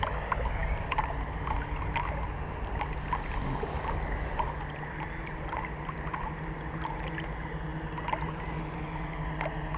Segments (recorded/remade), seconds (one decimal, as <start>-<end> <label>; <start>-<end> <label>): 0.0-9.8 recorded